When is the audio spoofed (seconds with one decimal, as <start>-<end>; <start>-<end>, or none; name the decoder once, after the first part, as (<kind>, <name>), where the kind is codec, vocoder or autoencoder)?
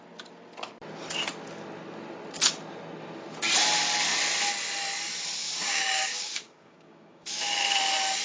5.4-7.4 (codec, DAC)